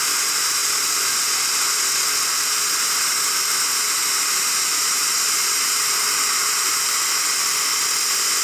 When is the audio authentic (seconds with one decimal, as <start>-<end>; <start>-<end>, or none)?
0.6-5.2; 6.7-7.3